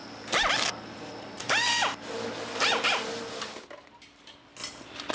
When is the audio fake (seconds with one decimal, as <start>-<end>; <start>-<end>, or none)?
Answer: none